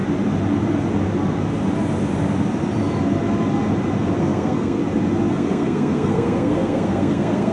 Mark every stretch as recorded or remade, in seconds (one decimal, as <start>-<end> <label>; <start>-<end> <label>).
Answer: 0.0-4.2 recorded; 4.2-4.8 remade; 4.8-5.3 recorded; 5.3-7.5 remade